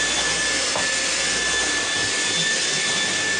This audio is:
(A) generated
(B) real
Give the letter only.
B